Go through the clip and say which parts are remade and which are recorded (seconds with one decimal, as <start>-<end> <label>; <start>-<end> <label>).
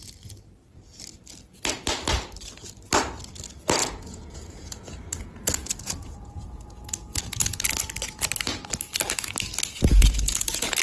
0.0-3.8 recorded; 3.8-7.7 remade; 7.7-9.9 recorded; 9.9-10.8 remade